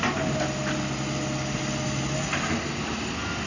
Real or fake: real